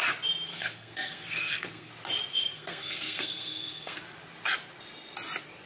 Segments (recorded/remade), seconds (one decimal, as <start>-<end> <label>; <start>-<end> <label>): 0.0-0.5 recorded; 0.5-1.9 remade; 1.9-2.3 recorded; 2.3-4.0 remade; 4.0-5.7 recorded